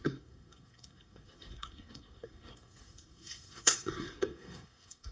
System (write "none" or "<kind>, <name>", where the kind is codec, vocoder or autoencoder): codec, SNAC